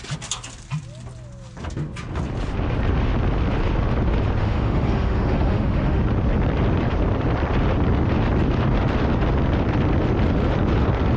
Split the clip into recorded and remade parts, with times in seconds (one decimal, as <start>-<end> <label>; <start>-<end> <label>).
0.0-4.4 recorded; 4.4-6.0 remade; 6.0-11.2 recorded